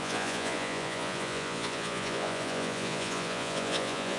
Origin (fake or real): fake